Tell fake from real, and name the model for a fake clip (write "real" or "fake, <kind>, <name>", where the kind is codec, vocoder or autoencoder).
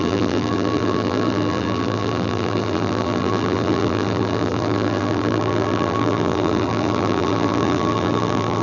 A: fake, vocoder, BigVGAN v2